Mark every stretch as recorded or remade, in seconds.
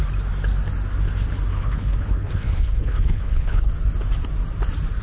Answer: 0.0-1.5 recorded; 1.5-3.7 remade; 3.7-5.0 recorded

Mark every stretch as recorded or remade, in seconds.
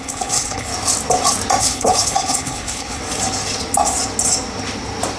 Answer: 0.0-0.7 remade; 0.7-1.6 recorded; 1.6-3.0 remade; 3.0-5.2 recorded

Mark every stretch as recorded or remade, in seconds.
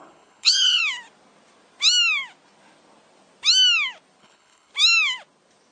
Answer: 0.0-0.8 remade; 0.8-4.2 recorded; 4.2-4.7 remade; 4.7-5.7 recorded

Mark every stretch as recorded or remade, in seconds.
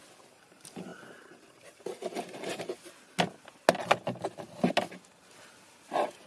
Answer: 0.0-6.3 recorded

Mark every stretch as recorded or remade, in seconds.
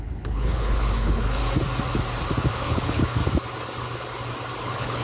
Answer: 0.0-1.4 remade; 1.4-2.5 recorded; 2.5-3.2 remade; 3.2-4.6 recorded; 4.6-5.0 remade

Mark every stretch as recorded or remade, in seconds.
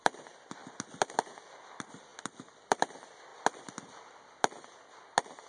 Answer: 0.0-5.5 recorded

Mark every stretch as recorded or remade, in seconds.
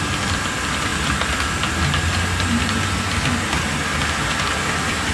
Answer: 0.0-5.1 recorded